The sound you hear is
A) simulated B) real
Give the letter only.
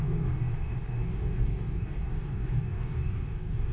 A